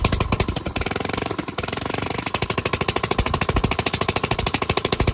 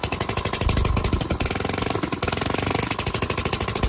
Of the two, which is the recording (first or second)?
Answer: second